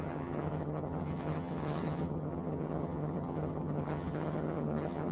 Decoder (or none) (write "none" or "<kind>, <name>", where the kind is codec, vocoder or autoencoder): vocoder, HiFi-GAN